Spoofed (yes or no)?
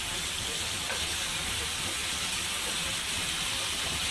no